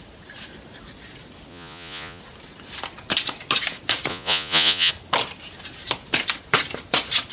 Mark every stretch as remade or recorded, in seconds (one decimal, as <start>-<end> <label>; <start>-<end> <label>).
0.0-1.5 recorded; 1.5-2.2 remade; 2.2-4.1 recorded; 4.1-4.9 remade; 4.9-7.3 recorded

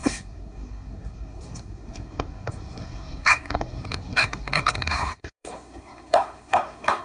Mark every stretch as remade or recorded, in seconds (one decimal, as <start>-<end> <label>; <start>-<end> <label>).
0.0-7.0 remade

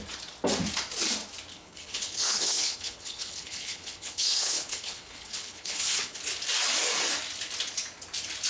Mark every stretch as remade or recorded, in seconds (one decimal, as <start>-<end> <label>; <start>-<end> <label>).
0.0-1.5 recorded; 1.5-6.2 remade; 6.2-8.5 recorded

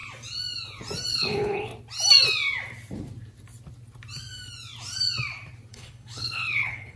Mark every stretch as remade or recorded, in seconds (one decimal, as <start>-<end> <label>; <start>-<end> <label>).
0.0-1.1 recorded; 1.1-1.7 remade; 1.7-5.7 recorded; 5.7-7.0 remade

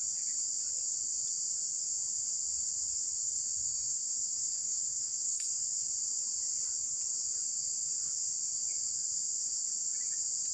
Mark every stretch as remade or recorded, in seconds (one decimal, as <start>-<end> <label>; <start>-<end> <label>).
0.0-3.6 recorded; 3.6-5.5 remade; 5.5-10.5 recorded